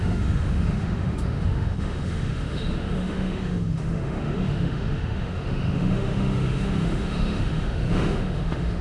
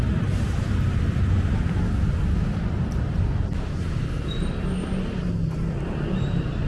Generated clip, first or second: first